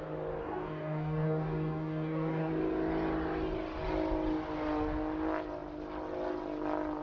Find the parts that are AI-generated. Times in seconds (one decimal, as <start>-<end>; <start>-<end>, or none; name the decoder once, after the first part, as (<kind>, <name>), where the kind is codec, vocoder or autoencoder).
0.4-2.5 (codec, DAC)